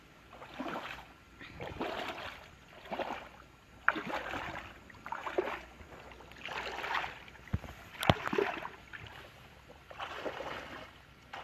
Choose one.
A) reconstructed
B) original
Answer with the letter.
B